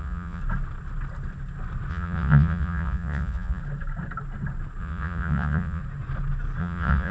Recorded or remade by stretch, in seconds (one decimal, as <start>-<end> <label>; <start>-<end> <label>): 0.0-0.4 remade; 0.4-1.9 recorded; 1.9-3.6 remade; 3.6-4.8 recorded; 4.8-5.8 remade; 5.8-6.6 recorded; 6.6-7.1 remade